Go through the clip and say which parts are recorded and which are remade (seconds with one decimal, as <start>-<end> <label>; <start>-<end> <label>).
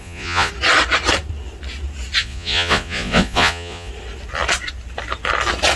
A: 0.0-0.5 remade; 0.5-2.2 recorded; 2.2-3.9 remade; 3.9-5.8 recorded